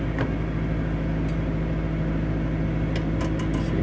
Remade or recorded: recorded